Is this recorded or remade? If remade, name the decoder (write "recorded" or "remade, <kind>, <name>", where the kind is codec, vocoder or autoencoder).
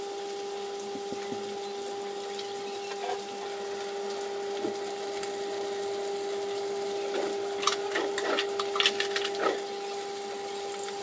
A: recorded